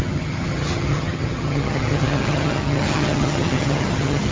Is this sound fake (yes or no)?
yes